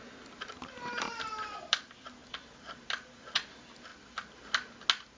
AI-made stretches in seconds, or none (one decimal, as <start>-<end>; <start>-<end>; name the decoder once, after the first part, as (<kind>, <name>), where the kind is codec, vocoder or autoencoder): none